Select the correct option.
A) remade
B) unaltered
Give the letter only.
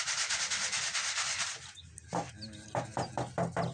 B